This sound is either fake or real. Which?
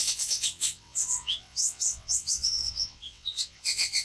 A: fake